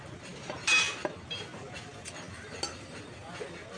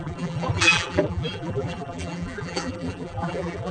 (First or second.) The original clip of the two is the first